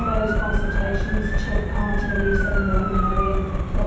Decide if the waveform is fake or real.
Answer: real